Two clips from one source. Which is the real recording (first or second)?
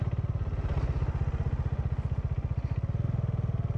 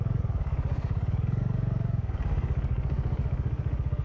first